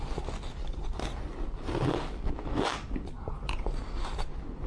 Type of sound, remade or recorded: recorded